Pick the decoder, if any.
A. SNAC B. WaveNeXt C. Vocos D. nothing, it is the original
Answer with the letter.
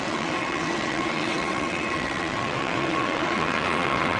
B